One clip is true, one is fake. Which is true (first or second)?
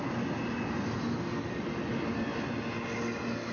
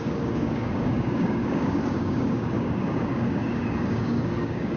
first